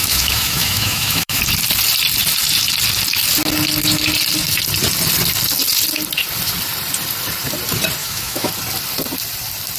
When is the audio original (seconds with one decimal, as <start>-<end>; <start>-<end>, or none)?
1.4-8.0; 8.5-9.8